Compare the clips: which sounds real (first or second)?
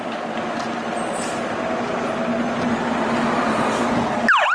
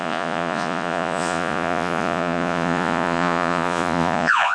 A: first